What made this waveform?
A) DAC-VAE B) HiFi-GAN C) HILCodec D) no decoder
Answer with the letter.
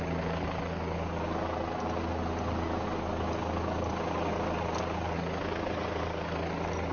D